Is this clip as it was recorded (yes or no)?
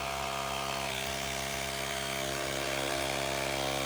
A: yes